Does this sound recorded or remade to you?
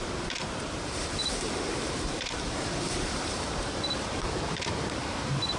remade